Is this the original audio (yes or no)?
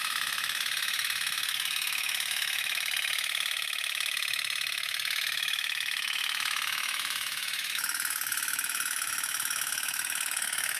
no